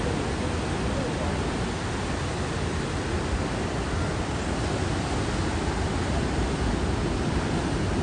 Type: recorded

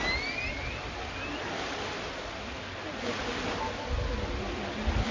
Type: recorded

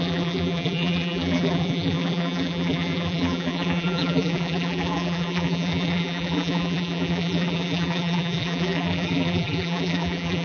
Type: remade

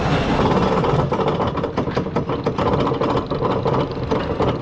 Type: recorded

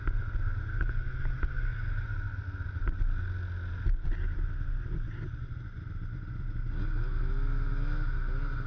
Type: recorded